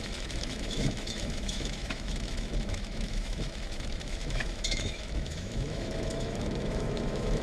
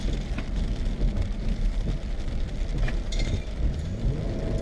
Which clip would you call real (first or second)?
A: second